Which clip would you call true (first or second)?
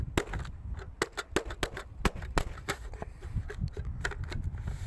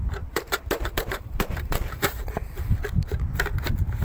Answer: first